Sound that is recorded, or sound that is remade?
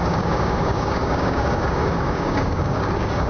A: remade